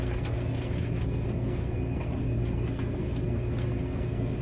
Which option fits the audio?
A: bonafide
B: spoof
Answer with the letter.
B